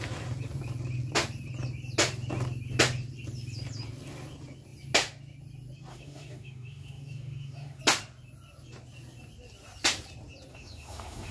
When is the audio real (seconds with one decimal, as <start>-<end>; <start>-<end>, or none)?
0.0-5.9; 7.8-10.5